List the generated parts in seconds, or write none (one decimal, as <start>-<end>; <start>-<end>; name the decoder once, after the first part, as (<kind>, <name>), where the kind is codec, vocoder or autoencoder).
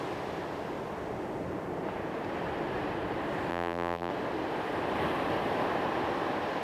3.5-4.1 (vocoder, BigVGAN v2)